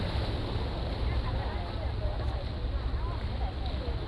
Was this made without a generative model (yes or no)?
yes